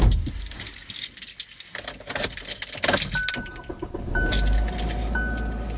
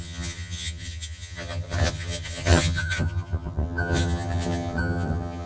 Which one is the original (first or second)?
first